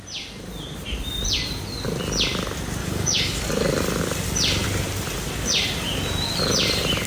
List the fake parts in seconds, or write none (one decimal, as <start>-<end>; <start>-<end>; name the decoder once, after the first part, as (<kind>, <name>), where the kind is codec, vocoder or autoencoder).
2.8-3.4 (codec, DAC)